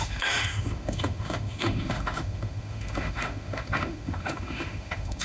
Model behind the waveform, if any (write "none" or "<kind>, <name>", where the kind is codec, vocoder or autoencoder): autoencoder, DAC-VAE